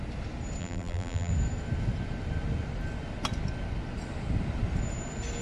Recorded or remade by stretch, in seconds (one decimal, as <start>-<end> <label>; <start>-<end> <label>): 0.0-0.6 recorded; 0.6-1.3 remade; 1.3-5.4 recorded